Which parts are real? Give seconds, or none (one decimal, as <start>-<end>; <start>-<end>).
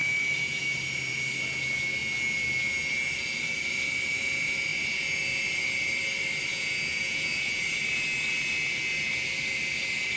0.0-6.5; 7.6-10.2